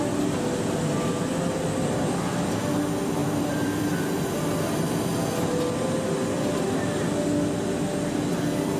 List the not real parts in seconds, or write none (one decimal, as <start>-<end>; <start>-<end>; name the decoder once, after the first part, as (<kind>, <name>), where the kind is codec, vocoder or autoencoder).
3.2-3.9 (vocoder, BigVGAN v2)